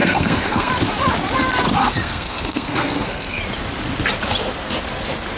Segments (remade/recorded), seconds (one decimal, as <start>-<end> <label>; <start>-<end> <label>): 0.0-0.7 remade; 0.7-1.8 recorded; 1.8-3.4 remade; 3.4-5.4 recorded

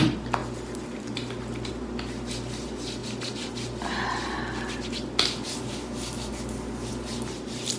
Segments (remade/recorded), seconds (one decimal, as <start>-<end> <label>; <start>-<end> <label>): 0.0-7.8 recorded

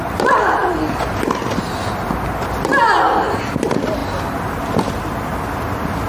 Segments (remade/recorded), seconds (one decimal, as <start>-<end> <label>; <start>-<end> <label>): 0.0-6.1 recorded

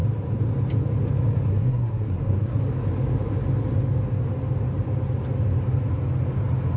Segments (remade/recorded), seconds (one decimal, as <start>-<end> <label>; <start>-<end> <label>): 0.0-1.5 recorded; 1.5-2.6 remade; 2.6-6.8 recorded